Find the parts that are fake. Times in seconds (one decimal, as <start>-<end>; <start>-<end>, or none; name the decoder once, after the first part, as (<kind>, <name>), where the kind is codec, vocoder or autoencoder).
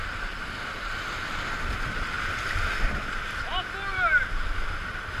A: 0.0-3.0 (vocoder, BigVGAN v2)